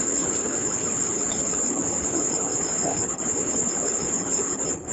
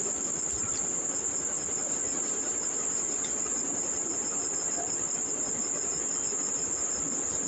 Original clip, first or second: second